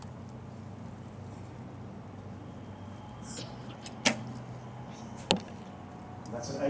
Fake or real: real